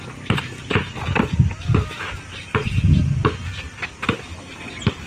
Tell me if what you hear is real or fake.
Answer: real